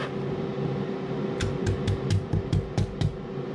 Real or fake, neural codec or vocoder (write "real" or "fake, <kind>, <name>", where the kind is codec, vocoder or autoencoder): real